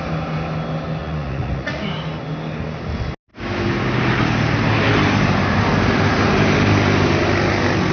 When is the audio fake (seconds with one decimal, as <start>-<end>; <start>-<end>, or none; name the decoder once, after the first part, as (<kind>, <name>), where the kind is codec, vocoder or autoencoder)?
1.0-1.8 (vocoder, Vocos)